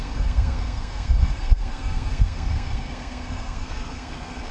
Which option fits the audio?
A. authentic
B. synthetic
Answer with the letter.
B